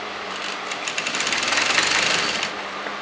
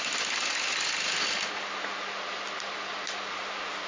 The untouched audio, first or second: second